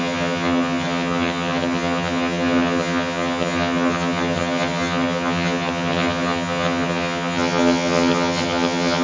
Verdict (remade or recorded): remade